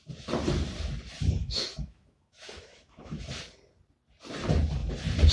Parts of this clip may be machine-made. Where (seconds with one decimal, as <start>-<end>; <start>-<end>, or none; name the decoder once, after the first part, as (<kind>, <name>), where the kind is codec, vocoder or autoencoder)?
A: 1.4-3.3 (autoencoder, DAC-VAE)